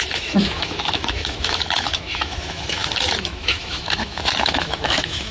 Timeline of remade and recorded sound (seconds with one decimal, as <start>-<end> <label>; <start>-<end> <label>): 0.0-5.3 remade